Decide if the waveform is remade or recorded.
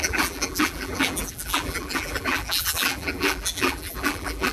remade